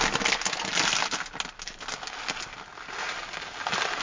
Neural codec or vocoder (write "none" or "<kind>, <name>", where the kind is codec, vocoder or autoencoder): none